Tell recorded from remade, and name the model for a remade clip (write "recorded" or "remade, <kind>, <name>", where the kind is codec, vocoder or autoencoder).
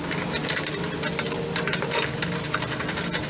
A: recorded